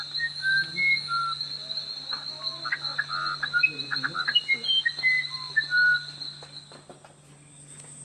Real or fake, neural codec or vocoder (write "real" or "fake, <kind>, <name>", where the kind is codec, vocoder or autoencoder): real